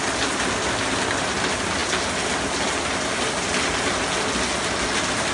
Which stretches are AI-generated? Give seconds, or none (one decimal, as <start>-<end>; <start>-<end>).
none